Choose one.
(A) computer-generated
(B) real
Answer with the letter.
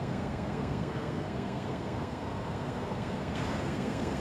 A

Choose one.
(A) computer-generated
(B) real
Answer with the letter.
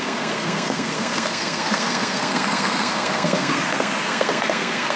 A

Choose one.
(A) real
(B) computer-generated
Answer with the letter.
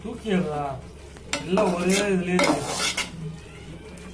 A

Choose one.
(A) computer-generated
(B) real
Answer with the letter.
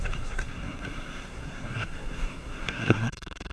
A